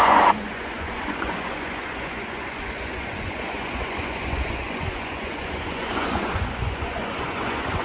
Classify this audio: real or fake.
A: fake